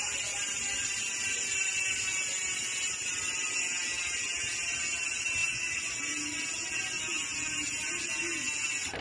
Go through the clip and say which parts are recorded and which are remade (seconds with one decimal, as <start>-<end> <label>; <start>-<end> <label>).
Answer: 0.0-5.4 recorded; 5.4-6.0 remade; 6.0-9.0 recorded